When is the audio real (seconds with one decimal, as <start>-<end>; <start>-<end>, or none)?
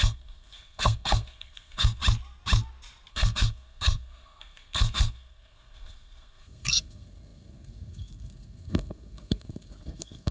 2.0-3.1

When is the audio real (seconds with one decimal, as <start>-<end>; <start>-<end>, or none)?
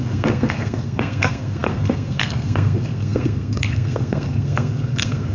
none